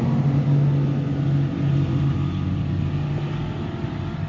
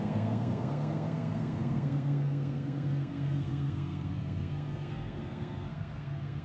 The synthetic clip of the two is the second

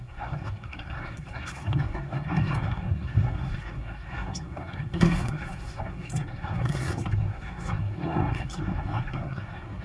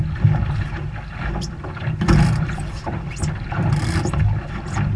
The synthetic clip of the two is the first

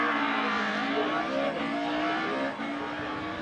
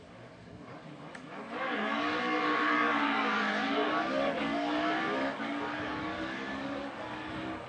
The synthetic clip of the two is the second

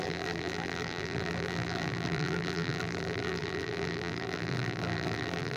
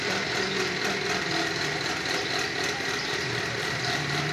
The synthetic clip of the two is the first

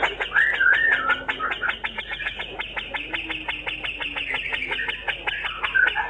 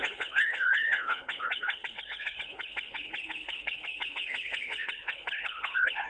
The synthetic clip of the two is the second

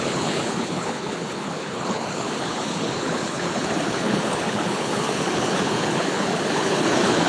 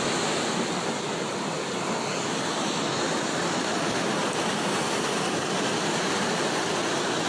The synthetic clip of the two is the first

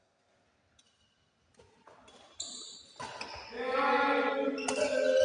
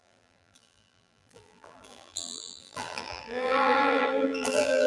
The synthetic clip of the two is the second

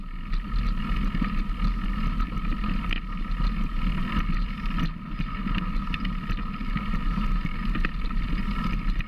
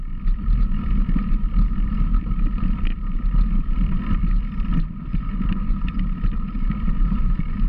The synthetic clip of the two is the second